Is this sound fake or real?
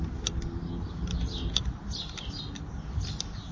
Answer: real